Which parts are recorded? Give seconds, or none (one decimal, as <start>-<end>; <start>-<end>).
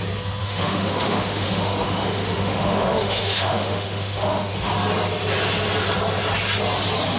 0.0-0.4; 4.7-7.2